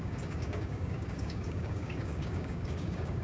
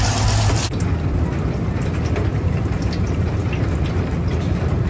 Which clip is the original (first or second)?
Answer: second